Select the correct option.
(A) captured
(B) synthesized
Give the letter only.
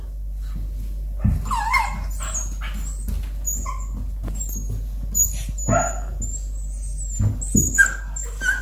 A